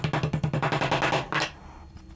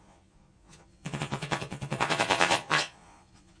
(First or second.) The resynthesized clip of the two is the second